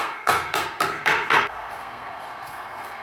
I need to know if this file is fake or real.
fake